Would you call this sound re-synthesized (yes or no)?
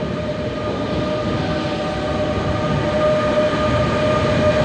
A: no